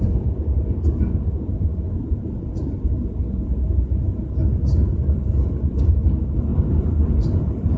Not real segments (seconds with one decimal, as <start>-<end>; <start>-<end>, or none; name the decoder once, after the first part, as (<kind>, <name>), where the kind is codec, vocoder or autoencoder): 1.7-3.1 (vocoder, BigVGAN v2); 6.5-7.8